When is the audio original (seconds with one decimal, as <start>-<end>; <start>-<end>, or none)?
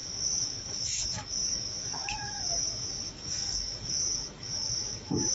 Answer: none